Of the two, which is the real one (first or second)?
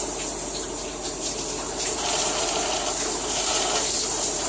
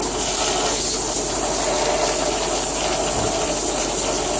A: second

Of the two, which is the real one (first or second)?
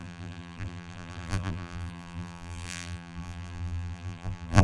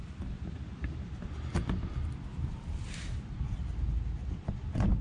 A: second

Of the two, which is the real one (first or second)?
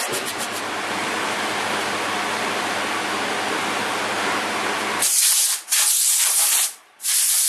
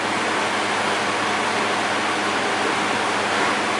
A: second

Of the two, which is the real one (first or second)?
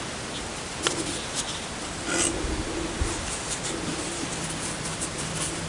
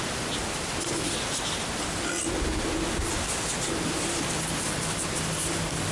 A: second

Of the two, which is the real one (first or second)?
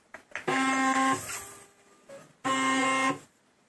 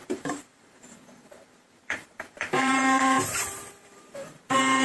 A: first